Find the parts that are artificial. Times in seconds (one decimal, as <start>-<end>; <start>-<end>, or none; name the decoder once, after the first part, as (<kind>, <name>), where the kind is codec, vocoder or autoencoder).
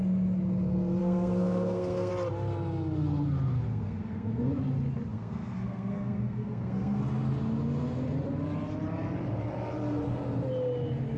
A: 1.0-2.1 (codec, SNAC); 3.7-4.5; 5.1-7.0